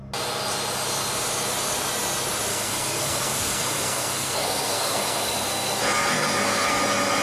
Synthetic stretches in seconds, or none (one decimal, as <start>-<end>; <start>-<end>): 2.5-6.8